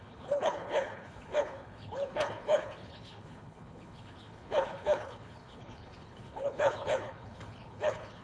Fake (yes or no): yes